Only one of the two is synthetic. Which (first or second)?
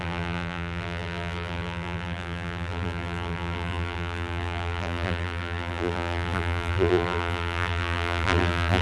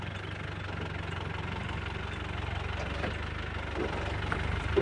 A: first